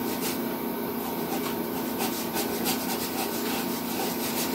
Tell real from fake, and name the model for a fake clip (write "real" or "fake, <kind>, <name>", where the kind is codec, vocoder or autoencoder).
real